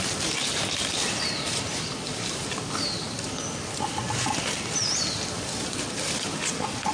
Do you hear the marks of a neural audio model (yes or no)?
no